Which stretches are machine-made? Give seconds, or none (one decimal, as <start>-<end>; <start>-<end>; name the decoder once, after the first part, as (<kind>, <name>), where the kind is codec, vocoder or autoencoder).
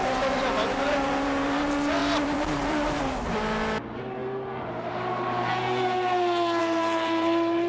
0.0-4.2 (vocoder, BigVGAN v2); 6.6-7.7